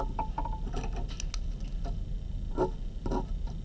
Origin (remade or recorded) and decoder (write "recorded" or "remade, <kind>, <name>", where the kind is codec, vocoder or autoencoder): recorded